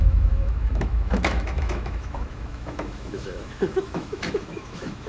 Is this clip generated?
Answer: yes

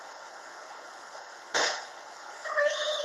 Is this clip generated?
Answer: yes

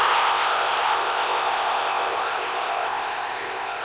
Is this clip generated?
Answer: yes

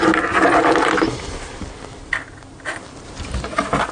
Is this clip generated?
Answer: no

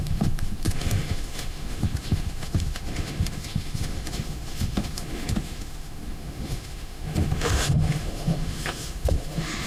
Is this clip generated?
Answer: yes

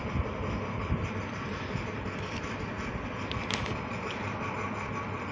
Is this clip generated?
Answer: no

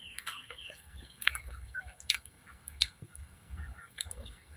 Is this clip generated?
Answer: yes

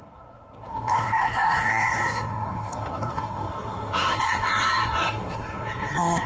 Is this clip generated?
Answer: yes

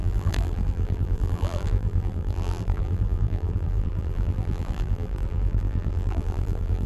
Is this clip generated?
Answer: yes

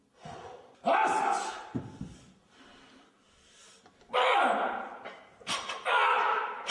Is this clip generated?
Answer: no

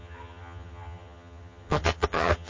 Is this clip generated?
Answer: yes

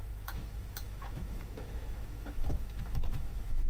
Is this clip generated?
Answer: yes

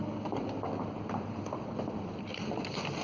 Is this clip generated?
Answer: no